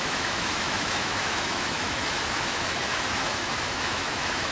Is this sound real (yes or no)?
no